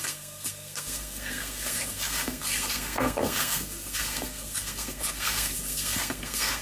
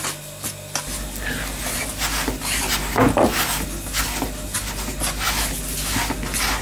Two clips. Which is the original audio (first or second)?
second